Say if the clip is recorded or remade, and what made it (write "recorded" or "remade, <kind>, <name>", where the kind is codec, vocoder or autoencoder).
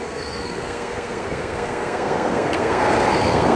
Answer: remade, codec, SNAC